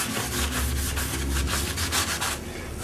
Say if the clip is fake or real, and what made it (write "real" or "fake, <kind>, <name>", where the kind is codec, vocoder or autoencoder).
real